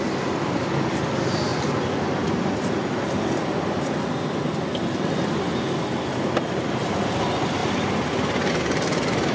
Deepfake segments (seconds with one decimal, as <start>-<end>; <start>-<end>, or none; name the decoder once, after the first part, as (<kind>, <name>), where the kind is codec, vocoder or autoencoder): 0.0-1.5 (vocoder, BigVGAN v2); 6.2-7.6; 8.5-9.3